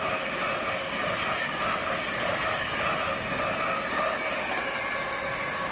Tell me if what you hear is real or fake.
real